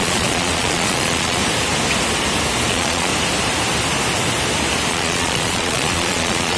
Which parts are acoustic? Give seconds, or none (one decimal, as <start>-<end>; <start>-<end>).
1.4-2.7; 3.1-4.9